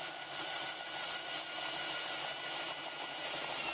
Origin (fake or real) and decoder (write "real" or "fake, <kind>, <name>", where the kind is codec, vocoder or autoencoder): real